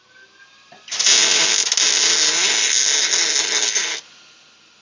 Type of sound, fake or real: real